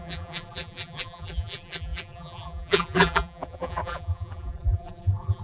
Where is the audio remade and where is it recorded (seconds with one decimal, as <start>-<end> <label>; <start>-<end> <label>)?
0.0-5.4 remade